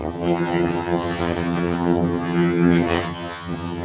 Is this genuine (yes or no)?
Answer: no